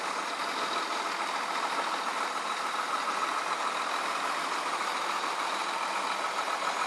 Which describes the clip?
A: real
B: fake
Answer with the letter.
A